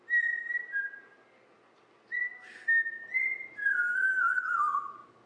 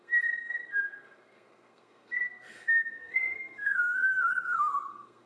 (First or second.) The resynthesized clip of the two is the second